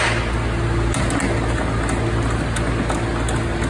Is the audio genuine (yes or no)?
yes